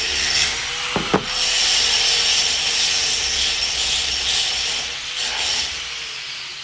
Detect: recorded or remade recorded